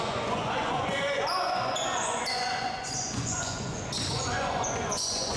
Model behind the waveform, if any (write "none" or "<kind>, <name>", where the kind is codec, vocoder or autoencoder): vocoder, Vocos